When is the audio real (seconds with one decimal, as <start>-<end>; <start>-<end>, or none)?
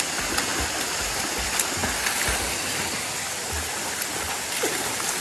0.0-5.2